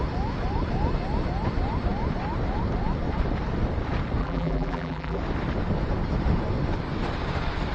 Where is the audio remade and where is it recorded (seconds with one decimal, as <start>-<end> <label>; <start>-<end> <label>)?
0.0-4.2 recorded; 4.2-5.2 remade; 5.2-7.7 recorded